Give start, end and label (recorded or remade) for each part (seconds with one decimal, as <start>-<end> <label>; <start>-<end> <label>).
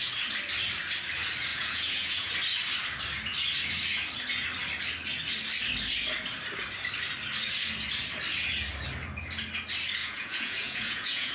0.0-1.5 recorded; 1.5-2.3 remade; 2.3-10.0 recorded; 10.0-11.3 remade